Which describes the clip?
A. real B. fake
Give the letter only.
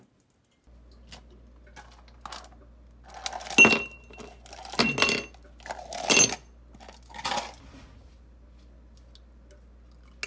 A